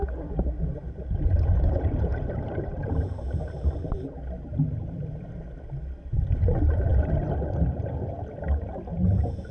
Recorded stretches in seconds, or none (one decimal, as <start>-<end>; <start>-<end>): 0.0-2.1; 3.9-9.5